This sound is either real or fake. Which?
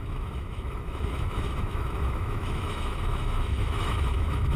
fake